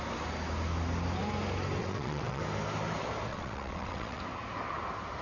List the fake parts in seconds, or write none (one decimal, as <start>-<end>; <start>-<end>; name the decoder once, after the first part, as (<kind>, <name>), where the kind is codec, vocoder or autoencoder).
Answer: 1.8-2.4 (vocoder, WaveNeXt); 3.3-4.2